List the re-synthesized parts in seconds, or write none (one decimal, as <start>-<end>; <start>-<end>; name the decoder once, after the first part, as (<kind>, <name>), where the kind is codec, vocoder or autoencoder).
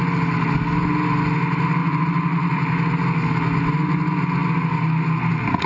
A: 1.8-2.7 (vocoder, BigVGAN v2)